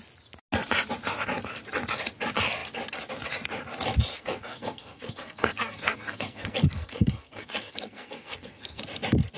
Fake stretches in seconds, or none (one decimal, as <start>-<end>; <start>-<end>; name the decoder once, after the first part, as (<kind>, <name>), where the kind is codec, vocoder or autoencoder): 4.1-8.8 (codec, SNAC)